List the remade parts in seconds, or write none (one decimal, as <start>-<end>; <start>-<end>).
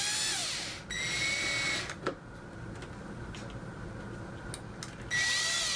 none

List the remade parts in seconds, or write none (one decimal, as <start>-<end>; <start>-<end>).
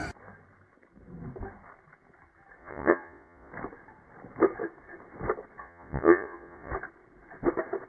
2.6-3.5; 5.6-6.7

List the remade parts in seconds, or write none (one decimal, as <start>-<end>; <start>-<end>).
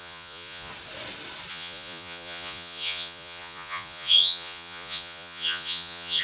0.0-0.7; 1.5-6.2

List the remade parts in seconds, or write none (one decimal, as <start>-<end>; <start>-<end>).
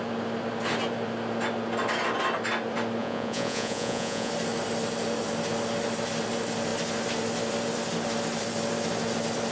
3.0-4.3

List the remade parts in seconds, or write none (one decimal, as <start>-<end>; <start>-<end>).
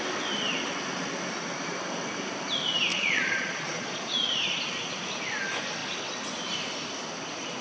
2.9-4.3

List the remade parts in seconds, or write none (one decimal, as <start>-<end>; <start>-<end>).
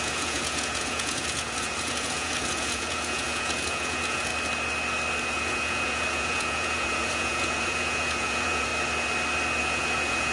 0.0-4.3; 5.2-8.7; 9.6-10.3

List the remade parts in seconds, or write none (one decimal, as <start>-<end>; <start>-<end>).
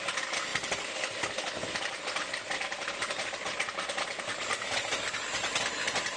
none